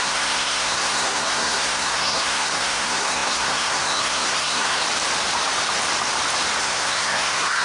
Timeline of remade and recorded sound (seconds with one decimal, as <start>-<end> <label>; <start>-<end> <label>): 0.0-4.8 remade; 4.8-6.6 recorded; 6.6-7.6 remade